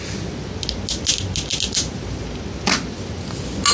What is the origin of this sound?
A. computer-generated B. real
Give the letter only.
B